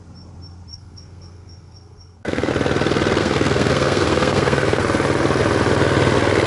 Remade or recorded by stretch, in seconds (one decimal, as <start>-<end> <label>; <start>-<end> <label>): 0.0-0.7 recorded; 0.7-2.5 remade; 2.5-3.2 recorded; 3.2-4.8 remade; 4.8-6.5 recorded